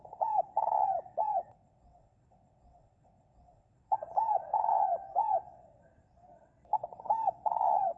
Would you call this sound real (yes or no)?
no